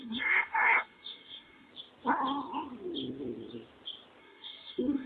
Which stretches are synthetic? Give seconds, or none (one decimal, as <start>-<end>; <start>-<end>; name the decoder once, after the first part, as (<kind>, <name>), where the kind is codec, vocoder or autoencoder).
0.0-1.7 (codec, SNAC); 4.2-5.1